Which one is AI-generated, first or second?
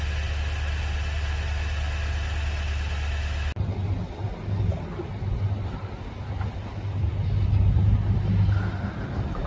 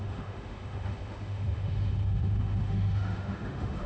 second